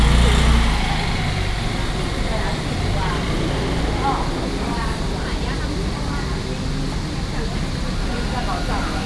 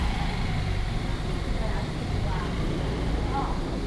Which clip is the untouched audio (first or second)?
first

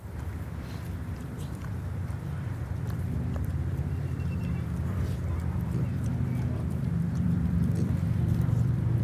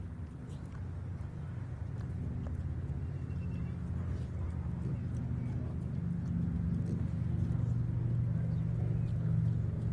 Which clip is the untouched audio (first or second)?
second